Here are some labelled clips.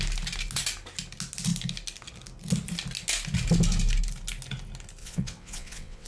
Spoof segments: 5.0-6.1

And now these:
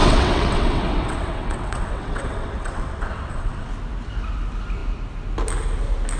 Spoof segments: 0.0-3.7

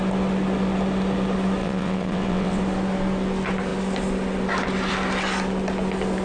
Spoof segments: 1.6-2.6

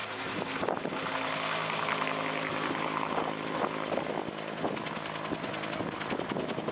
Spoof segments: none

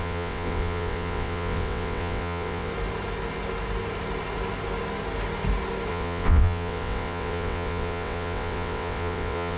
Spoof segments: 0.0-2.7; 5.9-9.6